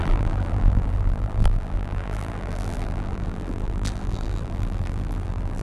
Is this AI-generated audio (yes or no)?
yes